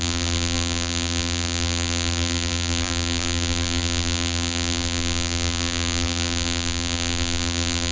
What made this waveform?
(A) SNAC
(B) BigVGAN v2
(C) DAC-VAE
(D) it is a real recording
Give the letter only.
B